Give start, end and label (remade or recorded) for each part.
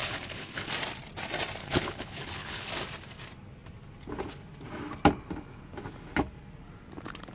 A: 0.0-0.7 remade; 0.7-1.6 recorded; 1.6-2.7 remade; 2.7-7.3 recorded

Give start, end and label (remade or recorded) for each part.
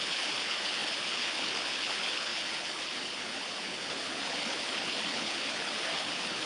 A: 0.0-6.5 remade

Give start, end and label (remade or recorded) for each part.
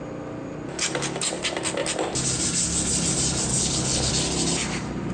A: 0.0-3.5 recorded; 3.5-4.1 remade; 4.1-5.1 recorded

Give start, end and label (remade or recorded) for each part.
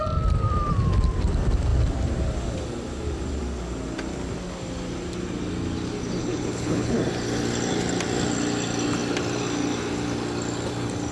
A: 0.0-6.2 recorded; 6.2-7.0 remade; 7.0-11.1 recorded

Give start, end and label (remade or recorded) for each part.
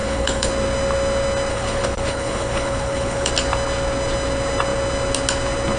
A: 0.0-0.5 remade; 0.5-1.5 recorded; 1.5-3.3 remade; 3.3-5.8 recorded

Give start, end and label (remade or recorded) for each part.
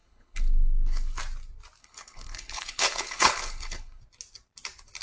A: 0.0-1.2 remade; 1.2-1.8 recorded; 1.8-4.0 remade; 4.0-5.0 recorded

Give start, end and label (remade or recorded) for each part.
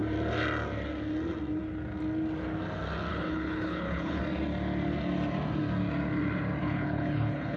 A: 0.0-3.1 recorded; 3.1-4.2 remade; 4.2-6.6 recorded; 6.6-7.6 remade